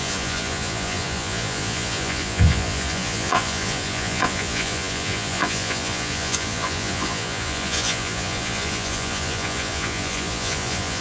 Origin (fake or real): fake